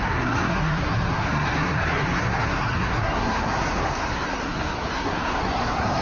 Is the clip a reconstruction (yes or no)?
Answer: yes